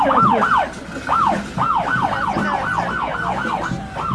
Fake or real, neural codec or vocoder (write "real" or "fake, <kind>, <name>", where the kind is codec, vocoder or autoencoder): real